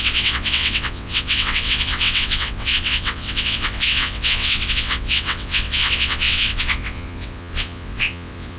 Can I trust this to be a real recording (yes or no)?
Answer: no